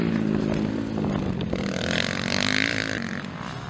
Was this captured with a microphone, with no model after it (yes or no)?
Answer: yes